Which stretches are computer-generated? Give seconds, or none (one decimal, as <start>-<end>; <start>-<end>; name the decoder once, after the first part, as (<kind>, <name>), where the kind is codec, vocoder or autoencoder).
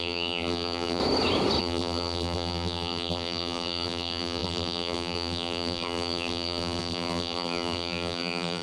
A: 0.0-1.0 (vocoder, BigVGAN v2); 1.6-8.6